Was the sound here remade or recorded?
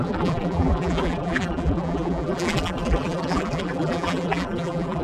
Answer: remade